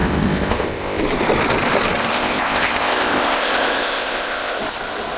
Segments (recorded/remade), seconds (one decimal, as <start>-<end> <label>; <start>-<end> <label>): 0.0-1.0 remade; 1.0-2.1 recorded; 2.1-4.6 remade; 4.6-5.2 recorded